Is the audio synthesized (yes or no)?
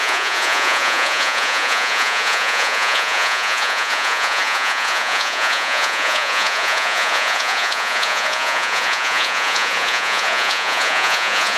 yes